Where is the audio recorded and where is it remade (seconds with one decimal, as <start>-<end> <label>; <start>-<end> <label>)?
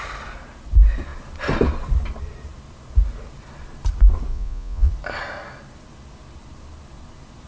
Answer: 0.0-4.3 recorded; 4.3-4.9 remade; 4.9-7.5 recorded